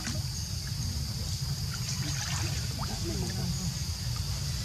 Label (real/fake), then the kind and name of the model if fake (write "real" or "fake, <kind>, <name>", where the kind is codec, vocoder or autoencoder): real